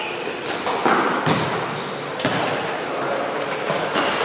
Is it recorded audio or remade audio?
recorded